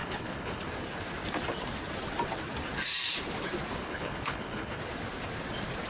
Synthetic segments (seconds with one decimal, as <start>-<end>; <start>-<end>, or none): 0.0-0.7; 3.8-4.8